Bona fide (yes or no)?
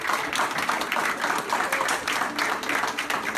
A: yes